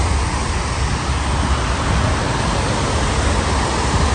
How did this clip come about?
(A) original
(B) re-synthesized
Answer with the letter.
A